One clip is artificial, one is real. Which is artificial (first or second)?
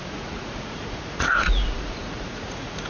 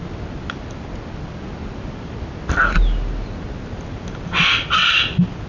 first